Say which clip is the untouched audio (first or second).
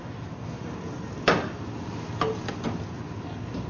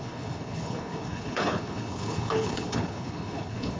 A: first